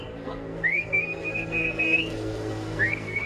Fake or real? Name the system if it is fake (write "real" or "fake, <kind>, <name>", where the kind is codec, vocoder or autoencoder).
fake, codec, SNAC